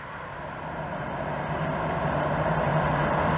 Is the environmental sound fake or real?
real